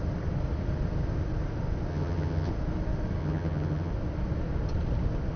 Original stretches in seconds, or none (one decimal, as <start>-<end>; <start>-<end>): 0.0-1.9; 2.5-3.2; 3.9-5.4